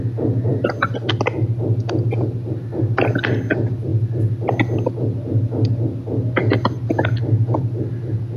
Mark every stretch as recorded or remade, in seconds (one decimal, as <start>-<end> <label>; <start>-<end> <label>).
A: 0.0-8.4 recorded